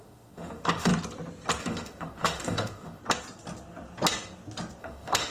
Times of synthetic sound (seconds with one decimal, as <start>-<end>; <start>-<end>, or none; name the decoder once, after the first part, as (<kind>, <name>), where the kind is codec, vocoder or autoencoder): 0.0-0.9 (autoencoder, DAC-VAE); 1.6-3.0; 4.8-5.3